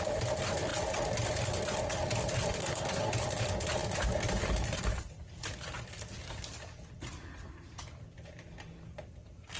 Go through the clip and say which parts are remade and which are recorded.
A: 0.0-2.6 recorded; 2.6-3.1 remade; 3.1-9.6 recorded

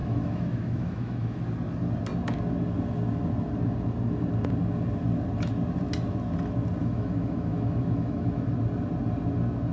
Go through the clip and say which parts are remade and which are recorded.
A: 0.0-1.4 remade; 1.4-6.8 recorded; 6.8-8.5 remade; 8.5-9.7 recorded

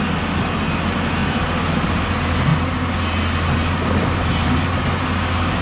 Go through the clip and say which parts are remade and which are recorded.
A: 0.0-1.2 recorded; 1.2-1.9 remade; 1.9-5.6 recorded

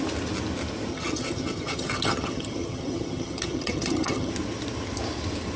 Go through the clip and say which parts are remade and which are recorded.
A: 0.0-0.9 recorded; 0.9-4.3 remade; 4.3-5.6 recorded